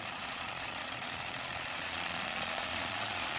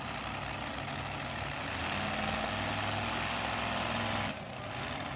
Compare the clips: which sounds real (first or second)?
second